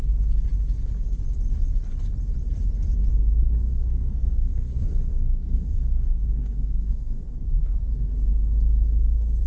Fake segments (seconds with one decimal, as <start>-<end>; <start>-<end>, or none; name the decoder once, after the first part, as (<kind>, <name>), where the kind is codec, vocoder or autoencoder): 3.1-7.9 (codec, SNAC)